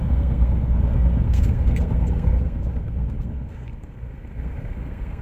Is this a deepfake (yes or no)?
yes